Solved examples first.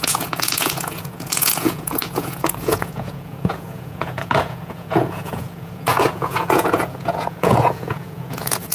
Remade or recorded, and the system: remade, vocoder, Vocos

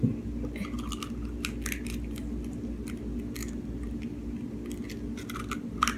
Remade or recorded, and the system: recorded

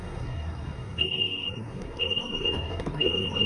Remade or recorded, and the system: remade, codec, SNAC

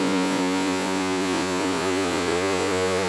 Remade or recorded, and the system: remade, vocoder, Vocos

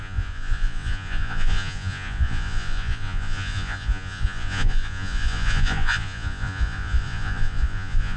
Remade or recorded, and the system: remade, vocoder, Vocos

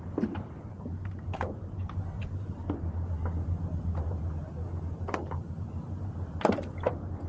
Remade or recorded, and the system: remade, vocoder, BigVGAN v2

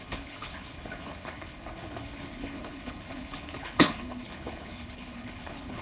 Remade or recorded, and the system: remade, codec, HILCodec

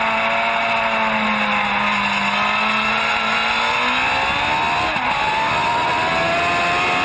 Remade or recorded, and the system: recorded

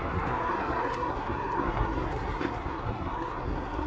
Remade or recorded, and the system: remade, codec, SNAC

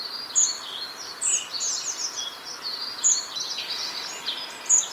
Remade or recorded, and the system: recorded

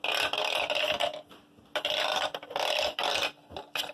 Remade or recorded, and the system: recorded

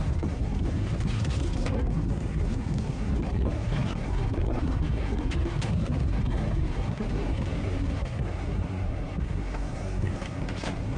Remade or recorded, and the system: remade, codec, SNAC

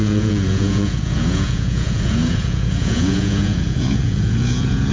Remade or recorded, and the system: remade, vocoder, Vocos